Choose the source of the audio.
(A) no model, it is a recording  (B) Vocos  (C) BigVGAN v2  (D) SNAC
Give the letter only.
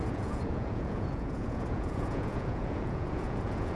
B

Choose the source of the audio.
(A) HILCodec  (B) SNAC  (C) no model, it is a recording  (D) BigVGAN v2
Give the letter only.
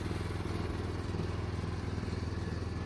C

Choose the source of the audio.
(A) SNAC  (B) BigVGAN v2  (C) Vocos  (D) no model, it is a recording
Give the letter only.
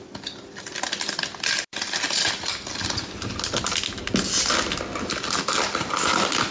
D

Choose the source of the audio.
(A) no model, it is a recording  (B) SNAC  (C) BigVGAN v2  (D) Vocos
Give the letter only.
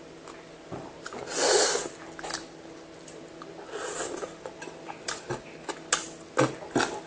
A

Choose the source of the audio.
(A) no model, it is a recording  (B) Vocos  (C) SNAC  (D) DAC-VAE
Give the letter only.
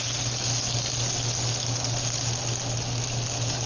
A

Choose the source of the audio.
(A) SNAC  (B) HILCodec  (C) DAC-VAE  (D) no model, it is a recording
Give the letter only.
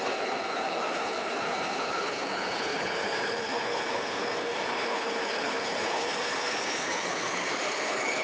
B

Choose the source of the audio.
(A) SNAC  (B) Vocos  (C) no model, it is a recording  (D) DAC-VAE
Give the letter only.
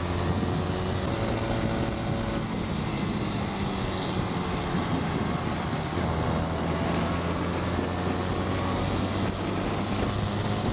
C